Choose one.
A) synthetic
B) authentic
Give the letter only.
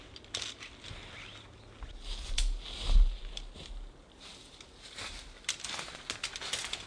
B